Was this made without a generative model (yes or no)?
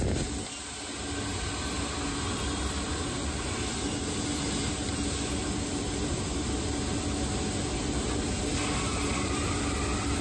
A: yes